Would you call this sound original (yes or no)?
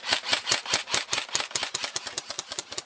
no